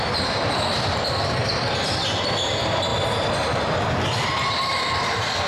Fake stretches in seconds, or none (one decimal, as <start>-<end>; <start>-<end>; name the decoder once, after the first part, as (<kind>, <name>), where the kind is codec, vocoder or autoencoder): 0.0-1.4 (vocoder, BigVGAN v2); 2.2-2.9; 3.9-5.5